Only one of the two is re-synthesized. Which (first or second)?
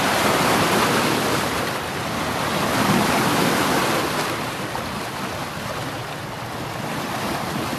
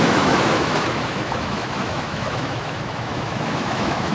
second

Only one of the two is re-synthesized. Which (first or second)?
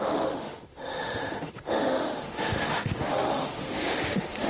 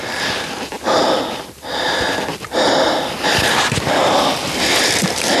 first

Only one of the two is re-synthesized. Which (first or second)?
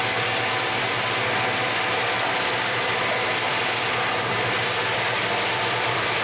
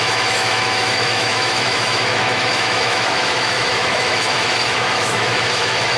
second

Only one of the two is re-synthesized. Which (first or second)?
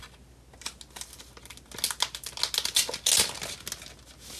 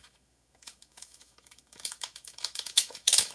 second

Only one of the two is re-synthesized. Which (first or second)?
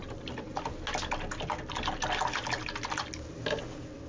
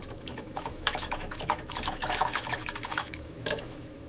second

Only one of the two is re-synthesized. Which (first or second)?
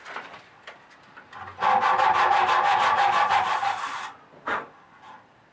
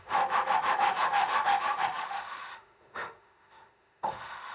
second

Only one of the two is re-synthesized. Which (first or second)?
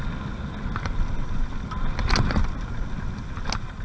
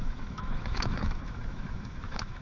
second